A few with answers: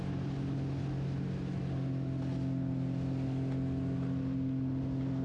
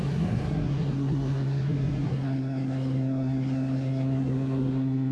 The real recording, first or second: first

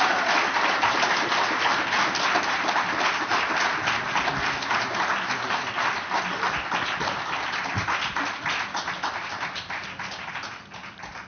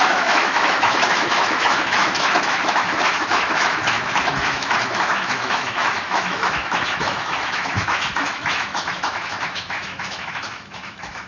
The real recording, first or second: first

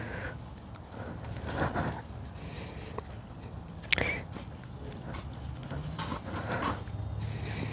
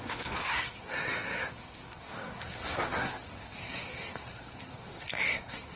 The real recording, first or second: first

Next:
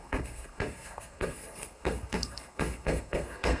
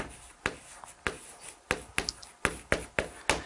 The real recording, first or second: second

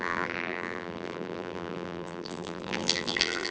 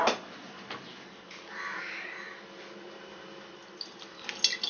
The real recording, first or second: second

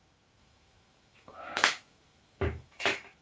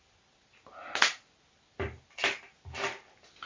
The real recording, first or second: second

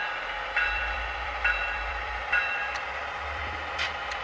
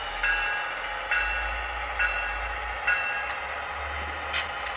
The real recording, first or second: second